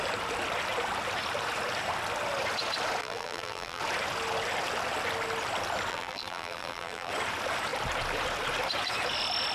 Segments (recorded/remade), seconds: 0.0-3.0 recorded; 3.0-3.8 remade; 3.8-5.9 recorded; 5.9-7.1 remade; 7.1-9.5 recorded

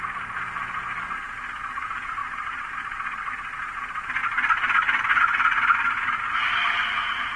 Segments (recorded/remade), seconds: 0.0-2.2 recorded; 2.2-3.6 remade; 3.6-7.4 recorded

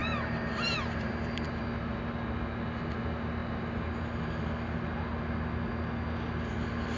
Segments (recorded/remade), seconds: 0.0-1.6 remade; 1.6-7.0 recorded

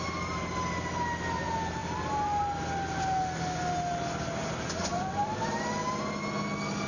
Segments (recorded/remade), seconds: 0.0-4.9 recorded; 4.9-5.7 remade; 5.7-6.9 recorded

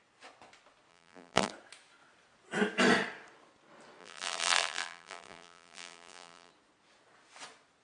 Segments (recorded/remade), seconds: 0.0-0.9 recorded; 0.9-1.5 remade; 1.5-4.0 recorded; 4.0-6.5 remade; 6.5-7.8 recorded